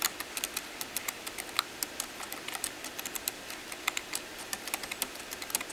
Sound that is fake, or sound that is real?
real